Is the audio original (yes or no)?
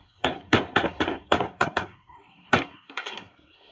no